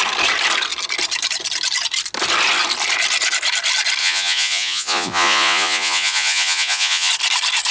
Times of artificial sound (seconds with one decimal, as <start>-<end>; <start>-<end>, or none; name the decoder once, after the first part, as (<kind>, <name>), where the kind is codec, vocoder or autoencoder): 4.0-7.1 (vocoder, Vocos)